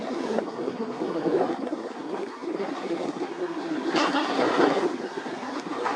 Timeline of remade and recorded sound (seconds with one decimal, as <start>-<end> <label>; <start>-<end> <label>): 0.0-6.0 remade